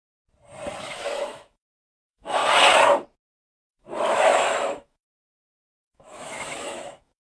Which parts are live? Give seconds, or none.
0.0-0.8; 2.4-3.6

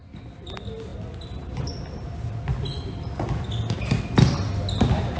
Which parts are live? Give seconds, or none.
0.0-5.2

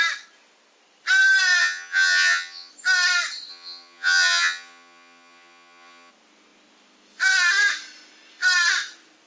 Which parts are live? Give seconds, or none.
0.0-1.6; 2.7-3.5; 6.1-9.3

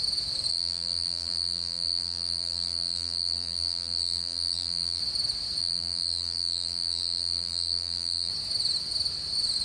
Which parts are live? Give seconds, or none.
0.0-0.5; 5.0-5.6; 8.3-9.6

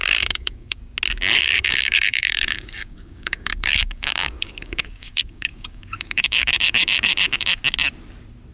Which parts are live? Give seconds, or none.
0.8-1.4; 7.6-8.5